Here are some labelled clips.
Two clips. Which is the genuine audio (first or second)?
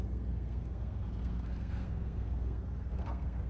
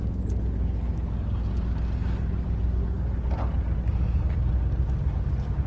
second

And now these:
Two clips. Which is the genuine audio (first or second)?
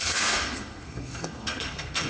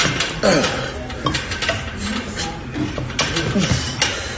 second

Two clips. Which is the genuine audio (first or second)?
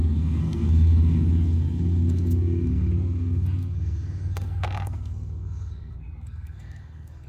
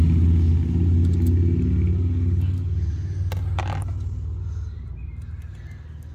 second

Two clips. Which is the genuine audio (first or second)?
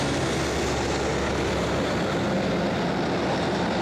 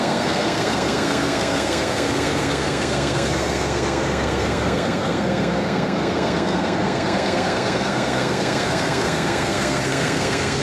first